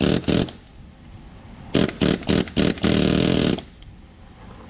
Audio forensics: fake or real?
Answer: real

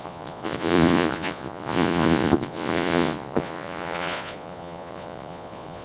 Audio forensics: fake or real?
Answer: fake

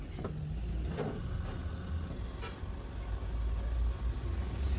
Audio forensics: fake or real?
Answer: real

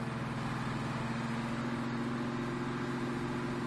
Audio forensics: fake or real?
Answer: real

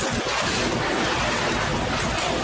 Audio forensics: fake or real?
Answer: real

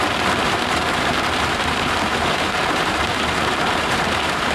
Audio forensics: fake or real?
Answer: fake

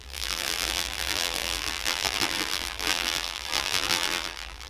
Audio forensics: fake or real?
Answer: fake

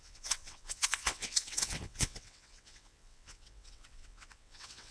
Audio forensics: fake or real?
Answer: fake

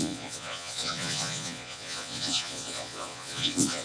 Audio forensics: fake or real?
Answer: fake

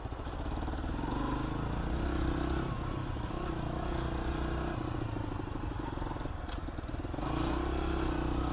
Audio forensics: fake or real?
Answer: real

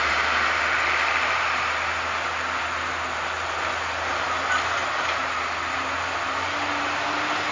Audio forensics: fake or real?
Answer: real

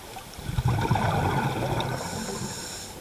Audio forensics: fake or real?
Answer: real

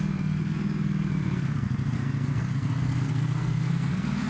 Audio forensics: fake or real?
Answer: fake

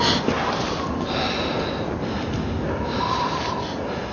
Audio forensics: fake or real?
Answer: real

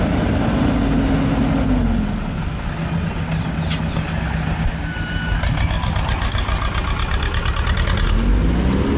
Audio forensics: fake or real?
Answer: real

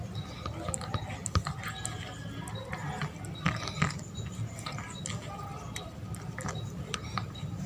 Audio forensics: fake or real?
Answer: real